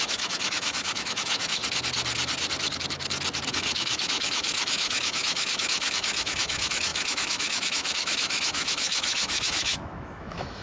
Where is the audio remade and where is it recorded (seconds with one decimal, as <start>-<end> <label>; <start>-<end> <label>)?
0.0-1.6 remade; 1.6-3.5 recorded; 3.5-10.6 remade

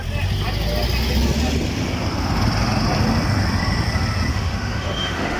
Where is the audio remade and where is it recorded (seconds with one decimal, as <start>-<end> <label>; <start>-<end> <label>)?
0.0-4.3 recorded; 4.3-5.4 remade